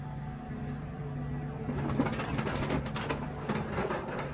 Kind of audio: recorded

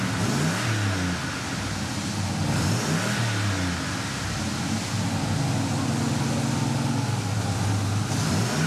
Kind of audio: recorded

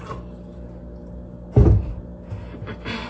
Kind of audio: recorded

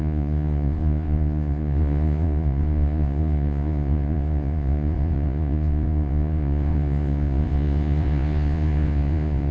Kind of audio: remade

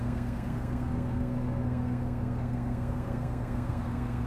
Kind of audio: remade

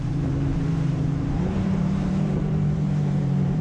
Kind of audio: remade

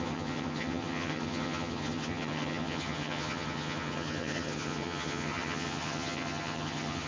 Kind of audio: remade